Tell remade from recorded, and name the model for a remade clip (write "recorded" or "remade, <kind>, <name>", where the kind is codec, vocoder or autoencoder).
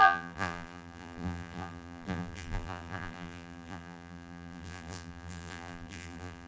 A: remade, vocoder, BigVGAN v2